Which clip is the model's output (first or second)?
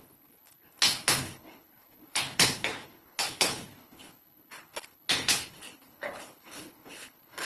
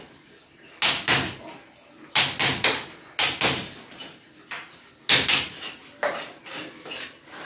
first